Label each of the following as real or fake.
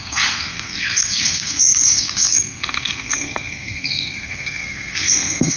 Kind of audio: fake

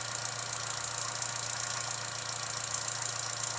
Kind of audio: real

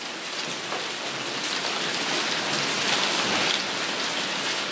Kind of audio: real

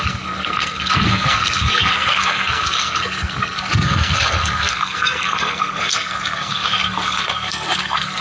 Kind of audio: fake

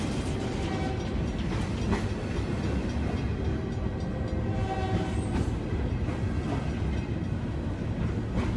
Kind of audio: real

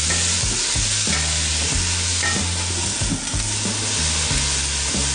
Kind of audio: real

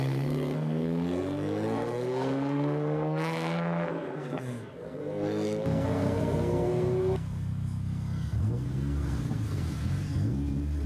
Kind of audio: fake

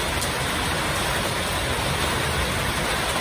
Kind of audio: real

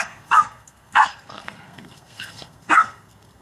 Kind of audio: fake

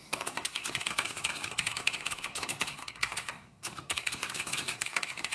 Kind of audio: fake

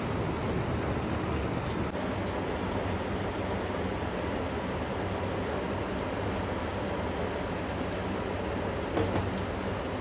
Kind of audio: real